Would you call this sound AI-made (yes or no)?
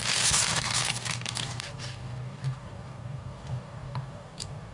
yes